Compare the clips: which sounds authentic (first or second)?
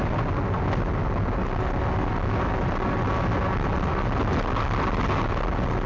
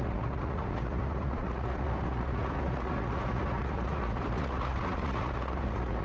first